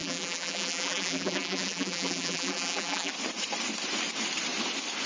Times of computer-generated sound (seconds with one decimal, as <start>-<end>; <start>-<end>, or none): 0.0-3.1

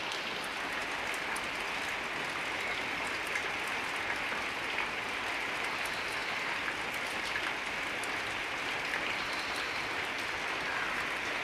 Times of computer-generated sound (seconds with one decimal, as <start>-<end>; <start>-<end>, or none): 6.2-7.2

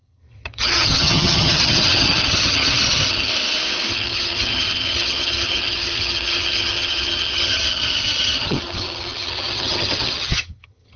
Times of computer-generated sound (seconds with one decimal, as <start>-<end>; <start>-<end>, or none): 0.0-3.3; 3.9-11.0

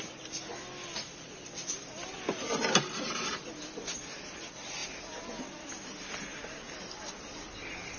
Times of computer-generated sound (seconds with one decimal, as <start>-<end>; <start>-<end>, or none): none

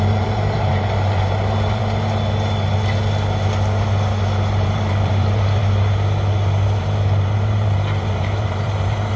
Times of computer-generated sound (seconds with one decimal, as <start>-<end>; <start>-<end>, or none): 0.0-1.8; 4.4-5.6; 6.8-9.2

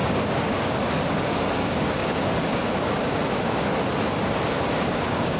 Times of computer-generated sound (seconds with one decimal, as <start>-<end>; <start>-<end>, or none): 0.0-3.7; 4.9-5.4